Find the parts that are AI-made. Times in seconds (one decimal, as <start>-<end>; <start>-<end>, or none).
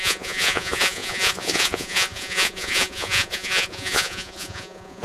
0.0-5.0